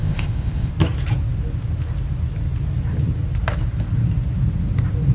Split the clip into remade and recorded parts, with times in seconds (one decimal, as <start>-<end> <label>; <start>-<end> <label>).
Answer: 0.0-0.7 remade; 0.7-5.1 recorded